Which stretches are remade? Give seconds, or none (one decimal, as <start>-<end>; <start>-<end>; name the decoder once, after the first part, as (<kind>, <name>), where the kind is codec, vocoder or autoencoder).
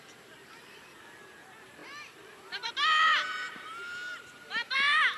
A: 0.0-5.2 (vocoder, BigVGAN v2)